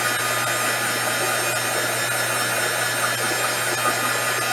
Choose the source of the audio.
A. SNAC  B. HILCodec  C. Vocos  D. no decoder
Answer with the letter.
D